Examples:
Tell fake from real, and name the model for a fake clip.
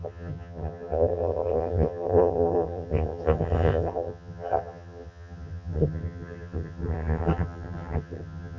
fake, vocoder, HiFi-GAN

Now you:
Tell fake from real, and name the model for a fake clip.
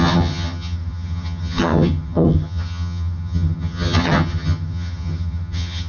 fake, vocoder, HiFi-GAN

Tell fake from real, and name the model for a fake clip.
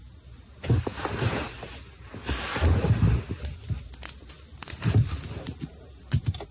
real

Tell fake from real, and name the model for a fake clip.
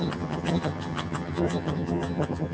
fake, vocoder, HiFi-GAN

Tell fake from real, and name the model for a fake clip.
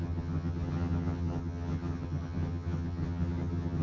fake, vocoder, HiFi-GAN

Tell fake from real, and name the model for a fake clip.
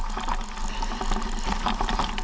real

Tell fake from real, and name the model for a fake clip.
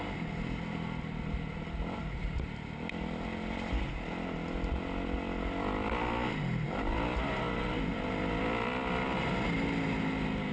real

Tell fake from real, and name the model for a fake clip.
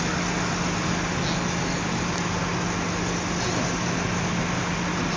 real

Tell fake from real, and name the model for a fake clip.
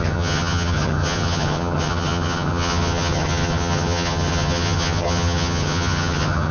fake, vocoder, HiFi-GAN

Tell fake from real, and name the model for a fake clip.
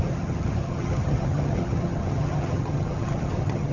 fake, vocoder, HiFi-GAN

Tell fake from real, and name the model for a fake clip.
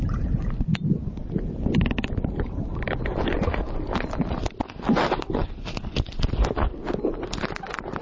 real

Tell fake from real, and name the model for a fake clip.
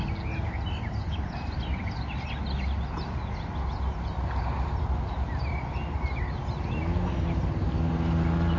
real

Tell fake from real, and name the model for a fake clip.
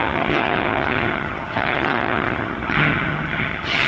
fake, vocoder, HiFi-GAN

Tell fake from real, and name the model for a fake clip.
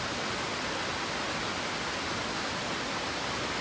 real